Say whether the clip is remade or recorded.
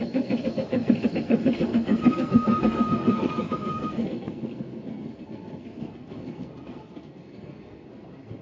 remade